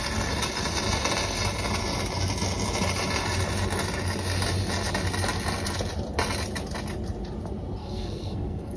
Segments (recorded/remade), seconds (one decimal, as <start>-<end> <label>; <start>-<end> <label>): 0.0-7.8 recorded; 7.8-8.8 remade